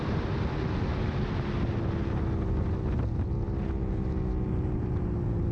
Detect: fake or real real